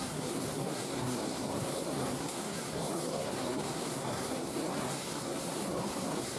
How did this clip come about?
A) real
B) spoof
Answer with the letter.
B